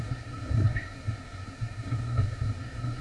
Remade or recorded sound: remade